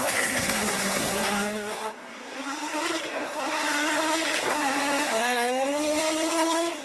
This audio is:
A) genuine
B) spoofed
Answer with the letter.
B